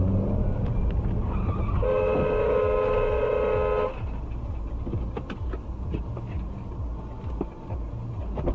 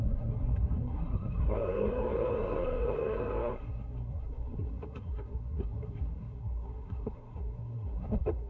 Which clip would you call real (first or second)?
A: first